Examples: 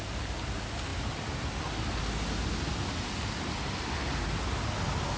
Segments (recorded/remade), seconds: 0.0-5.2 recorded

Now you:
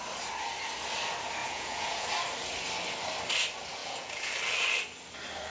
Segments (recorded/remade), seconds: 0.0-1.4 recorded; 1.4-2.1 remade; 2.1-3.8 recorded; 3.8-4.3 remade; 4.3-5.5 recorded

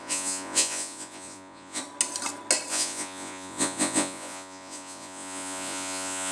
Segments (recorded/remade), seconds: 0.0-1.8 remade; 1.8-2.7 recorded; 2.7-6.3 remade

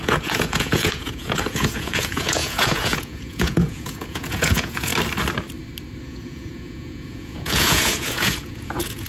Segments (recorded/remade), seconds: 0.0-4.9 remade; 4.9-6.0 recorded; 6.0-9.1 remade

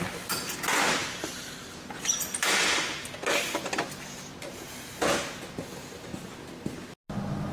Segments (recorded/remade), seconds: 0.0-7.5 recorded

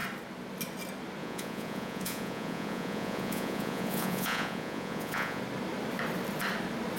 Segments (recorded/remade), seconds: 0.0-1.2 recorded; 1.2-5.4 remade; 5.4-7.0 recorded

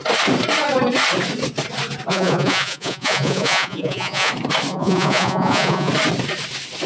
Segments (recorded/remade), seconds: 0.0-2.1 recorded; 2.1-4.3 remade; 4.3-4.7 recorded; 4.7-5.9 remade; 5.9-6.9 recorded

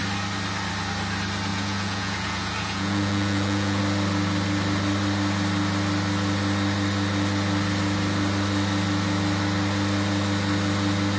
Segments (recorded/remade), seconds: 0.0-1.5 recorded; 1.5-3.8 remade; 3.8-11.2 recorded